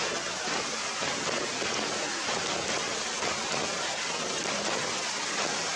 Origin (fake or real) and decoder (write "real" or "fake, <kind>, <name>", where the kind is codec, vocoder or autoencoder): real